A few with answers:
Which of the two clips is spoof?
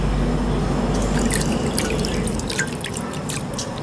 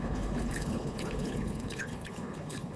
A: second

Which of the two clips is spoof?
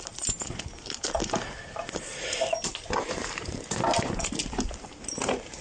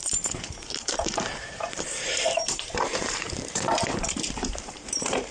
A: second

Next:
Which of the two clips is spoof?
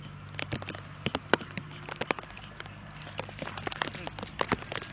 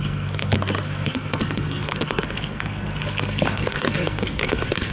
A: second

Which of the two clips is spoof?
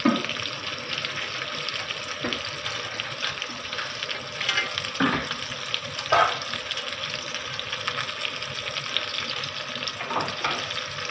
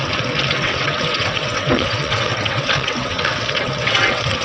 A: second